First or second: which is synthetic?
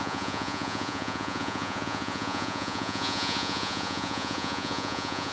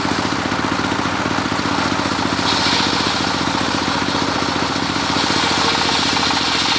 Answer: first